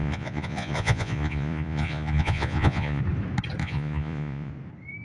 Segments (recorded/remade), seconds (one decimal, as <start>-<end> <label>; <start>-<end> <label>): 0.0-3.0 remade; 3.0-3.6 recorded; 3.6-4.5 remade; 4.5-5.0 recorded